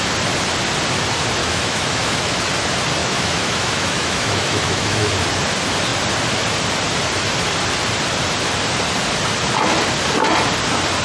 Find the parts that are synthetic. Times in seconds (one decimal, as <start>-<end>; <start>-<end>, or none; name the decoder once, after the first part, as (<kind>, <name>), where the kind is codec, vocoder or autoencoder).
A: 1.4-2.4 (autoencoder, DAC-VAE); 3.0-5.1